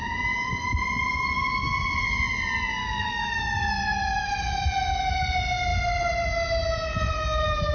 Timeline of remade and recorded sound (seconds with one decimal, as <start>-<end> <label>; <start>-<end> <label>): 0.0-2.8 recorded; 2.8-4.3 remade; 4.3-7.7 recorded